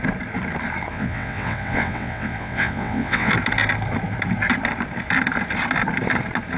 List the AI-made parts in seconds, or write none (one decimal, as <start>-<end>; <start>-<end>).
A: 0.9-3.3